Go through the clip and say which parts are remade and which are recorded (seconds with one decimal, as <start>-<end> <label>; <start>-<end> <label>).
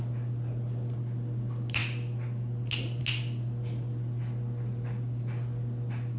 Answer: 0.0-6.2 recorded